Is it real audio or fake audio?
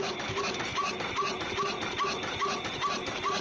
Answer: real